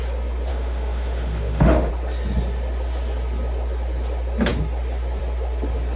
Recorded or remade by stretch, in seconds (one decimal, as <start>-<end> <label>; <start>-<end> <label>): 0.0-0.5 recorded; 0.5-1.9 remade; 1.9-6.0 recorded